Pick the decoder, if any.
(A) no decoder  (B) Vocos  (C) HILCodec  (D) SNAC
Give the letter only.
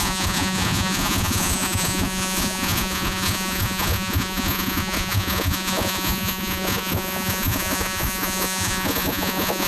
B